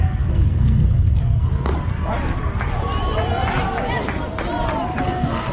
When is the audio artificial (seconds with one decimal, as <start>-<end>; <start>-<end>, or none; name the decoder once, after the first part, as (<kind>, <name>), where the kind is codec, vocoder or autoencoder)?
0.0-1.7 (codec, SNAC); 5.0-5.5